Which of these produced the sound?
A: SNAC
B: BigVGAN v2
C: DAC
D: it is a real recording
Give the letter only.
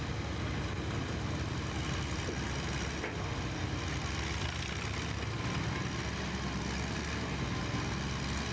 D